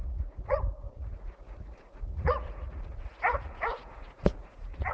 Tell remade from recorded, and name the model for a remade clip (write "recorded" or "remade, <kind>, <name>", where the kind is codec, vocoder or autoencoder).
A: remade, vocoder, Vocos